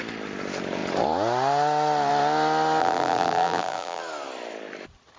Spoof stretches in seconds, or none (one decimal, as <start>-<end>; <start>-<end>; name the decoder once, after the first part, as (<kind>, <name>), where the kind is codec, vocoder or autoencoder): 2.8-4.0 (vocoder, BigVGAN v2)